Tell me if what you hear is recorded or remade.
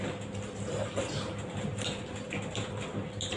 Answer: recorded